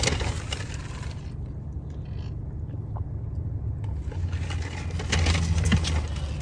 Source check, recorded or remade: recorded